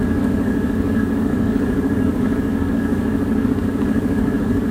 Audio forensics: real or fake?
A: fake